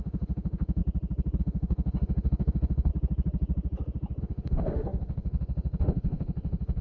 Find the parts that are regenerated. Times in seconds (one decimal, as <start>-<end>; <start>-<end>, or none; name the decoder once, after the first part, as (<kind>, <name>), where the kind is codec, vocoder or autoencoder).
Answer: 0.0-0.8 (autoencoder, DAC-VAE); 1.4-2.9; 4.2-6.8